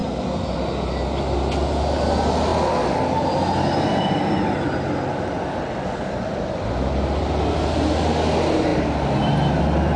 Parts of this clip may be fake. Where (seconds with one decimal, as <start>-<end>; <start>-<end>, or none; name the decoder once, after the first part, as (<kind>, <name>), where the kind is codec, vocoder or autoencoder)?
none